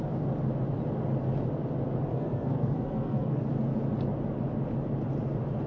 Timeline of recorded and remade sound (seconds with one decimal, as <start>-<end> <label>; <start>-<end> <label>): 0.0-2.1 recorded; 2.1-3.5 remade; 3.5-5.7 recorded